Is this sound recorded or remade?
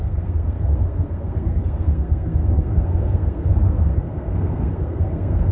remade